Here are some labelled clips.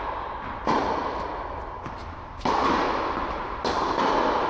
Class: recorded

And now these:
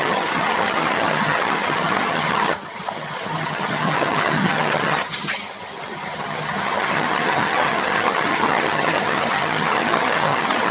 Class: remade